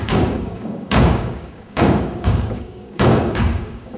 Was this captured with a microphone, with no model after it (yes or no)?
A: no